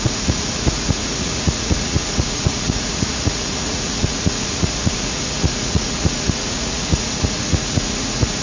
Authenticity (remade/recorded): remade